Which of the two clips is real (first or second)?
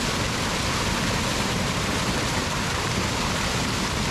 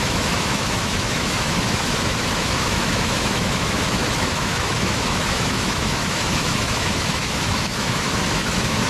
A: first